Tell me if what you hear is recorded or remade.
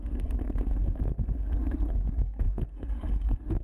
remade